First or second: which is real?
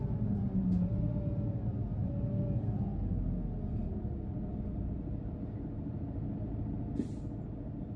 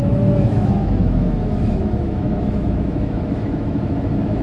first